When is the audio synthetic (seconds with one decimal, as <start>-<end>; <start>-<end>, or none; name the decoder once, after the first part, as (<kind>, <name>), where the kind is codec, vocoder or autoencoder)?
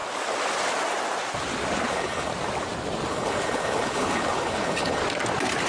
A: 1.9-2.3 (codec, HILCodec); 3.1-5.0